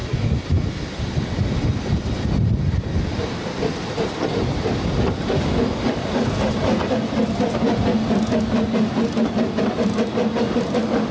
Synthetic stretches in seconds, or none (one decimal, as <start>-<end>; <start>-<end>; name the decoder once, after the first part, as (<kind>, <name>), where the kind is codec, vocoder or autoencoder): none